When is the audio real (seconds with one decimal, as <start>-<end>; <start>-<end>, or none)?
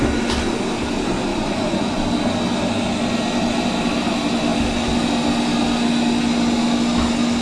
0.0-1.3; 2.0-7.4